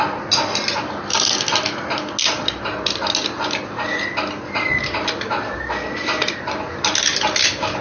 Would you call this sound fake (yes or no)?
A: no